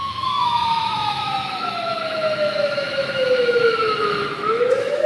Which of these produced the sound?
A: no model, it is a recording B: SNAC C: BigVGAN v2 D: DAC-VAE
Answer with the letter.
D